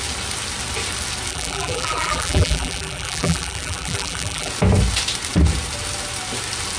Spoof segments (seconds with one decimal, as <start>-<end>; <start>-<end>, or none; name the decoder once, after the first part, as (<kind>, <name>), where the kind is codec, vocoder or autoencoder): 1.3-4.5 (vocoder, BigVGAN v2)